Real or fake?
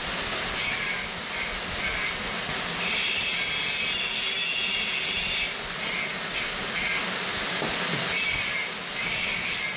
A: real